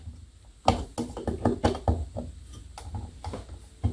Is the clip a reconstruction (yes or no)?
no